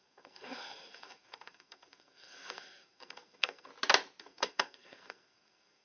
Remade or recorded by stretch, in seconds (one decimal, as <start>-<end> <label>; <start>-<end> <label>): 0.0-3.7 remade; 3.7-4.2 recorded; 4.2-5.8 remade